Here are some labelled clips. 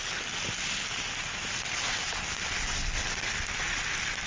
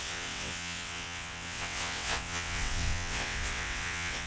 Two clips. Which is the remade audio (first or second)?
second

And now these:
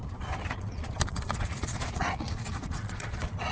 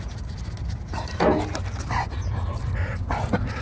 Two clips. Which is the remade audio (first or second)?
first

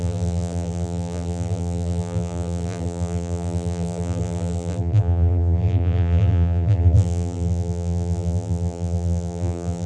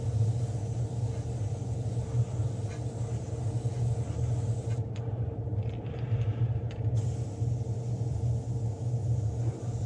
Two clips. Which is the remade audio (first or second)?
first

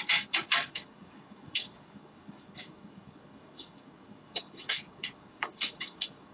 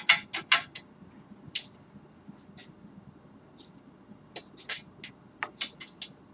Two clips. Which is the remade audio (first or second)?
first